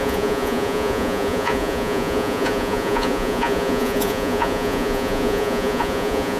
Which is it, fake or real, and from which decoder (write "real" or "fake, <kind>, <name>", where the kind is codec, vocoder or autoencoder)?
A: fake, vocoder, Vocos